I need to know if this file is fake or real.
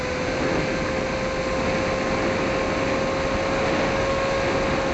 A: real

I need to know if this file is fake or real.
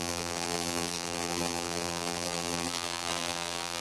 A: fake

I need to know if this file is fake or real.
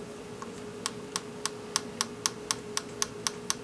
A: real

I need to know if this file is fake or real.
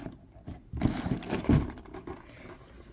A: real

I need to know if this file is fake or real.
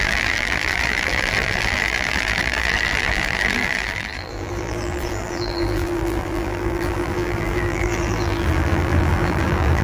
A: fake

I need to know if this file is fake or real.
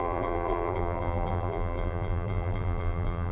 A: fake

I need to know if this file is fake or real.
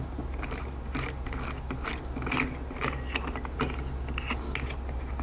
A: real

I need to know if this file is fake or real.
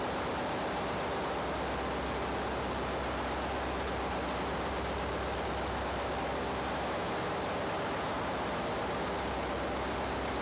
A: real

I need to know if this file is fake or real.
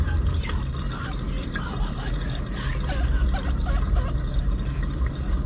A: real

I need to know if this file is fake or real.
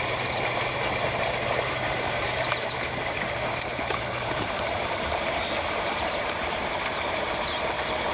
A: fake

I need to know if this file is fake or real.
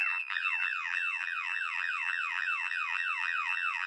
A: fake